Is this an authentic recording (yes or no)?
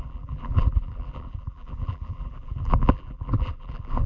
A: no